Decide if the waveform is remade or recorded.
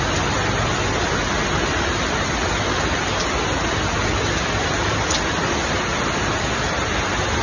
recorded